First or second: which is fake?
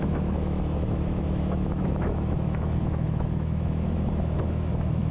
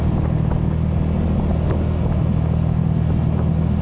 first